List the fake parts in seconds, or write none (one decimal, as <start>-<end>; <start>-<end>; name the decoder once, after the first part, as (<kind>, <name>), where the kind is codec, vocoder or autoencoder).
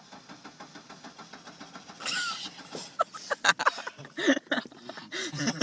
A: 3.7-4.8 (vocoder, BigVGAN v2)